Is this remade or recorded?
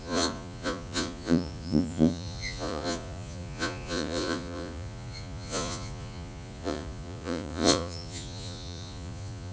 remade